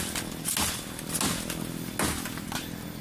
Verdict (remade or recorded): recorded